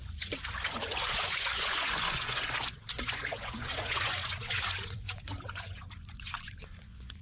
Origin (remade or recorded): remade